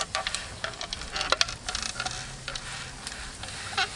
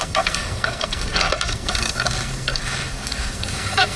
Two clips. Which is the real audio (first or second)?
first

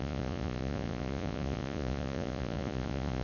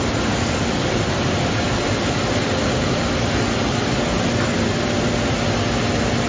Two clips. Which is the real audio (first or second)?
second